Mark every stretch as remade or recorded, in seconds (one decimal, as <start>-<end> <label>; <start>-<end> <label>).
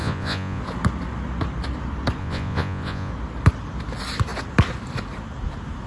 0.0-0.6 remade; 0.6-2.2 recorded; 2.2-3.1 remade; 3.1-5.9 recorded